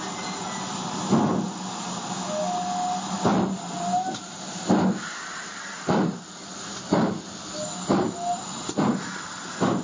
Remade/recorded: recorded